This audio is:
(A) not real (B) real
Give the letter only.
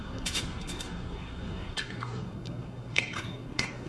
A